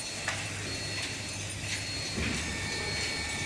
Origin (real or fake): real